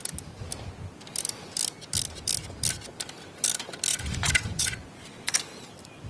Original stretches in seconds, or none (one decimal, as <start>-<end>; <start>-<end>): 0.0-3.9; 5.4-6.1